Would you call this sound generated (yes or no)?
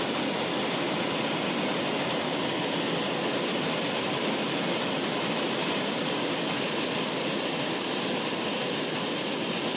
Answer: no